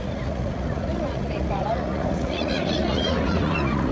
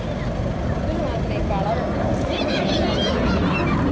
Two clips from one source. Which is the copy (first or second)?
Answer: first